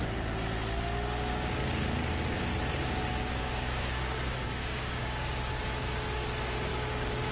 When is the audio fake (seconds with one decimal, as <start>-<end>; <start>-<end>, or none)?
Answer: 3.1-5.5; 6.7-7.3